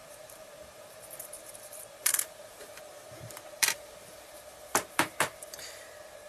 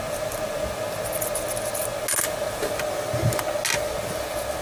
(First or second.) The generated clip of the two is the first